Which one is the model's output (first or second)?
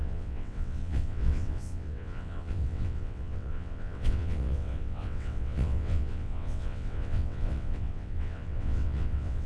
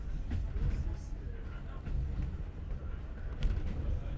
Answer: first